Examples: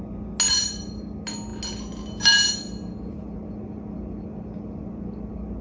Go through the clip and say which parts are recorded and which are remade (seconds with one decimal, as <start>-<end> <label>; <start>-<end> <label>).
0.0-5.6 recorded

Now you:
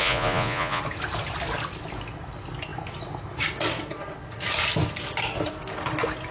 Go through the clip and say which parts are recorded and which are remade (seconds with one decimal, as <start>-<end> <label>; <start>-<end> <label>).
0.0-0.8 remade; 0.8-6.3 recorded

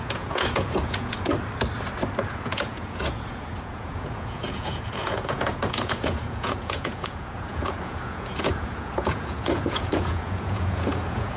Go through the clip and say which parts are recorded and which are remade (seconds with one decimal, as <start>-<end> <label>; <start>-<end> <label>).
0.0-1.3 remade; 1.3-2.2 recorded; 2.2-11.4 remade

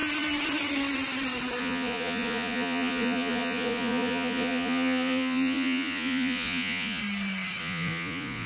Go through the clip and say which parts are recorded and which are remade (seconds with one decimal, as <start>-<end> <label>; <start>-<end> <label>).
0.0-1.6 recorded; 1.6-7.0 remade; 7.0-7.6 recorded; 7.6-8.5 remade